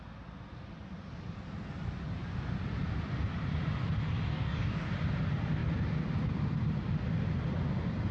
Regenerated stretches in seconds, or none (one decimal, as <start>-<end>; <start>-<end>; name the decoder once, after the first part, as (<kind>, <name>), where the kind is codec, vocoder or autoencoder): 4.3-4.9 (codec, DAC)